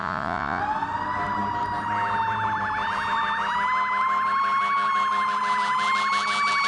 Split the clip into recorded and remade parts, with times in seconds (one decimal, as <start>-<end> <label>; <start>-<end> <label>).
0.0-0.6 remade; 0.6-6.7 recorded